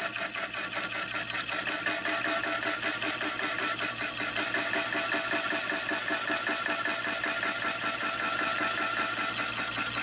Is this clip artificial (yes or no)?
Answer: no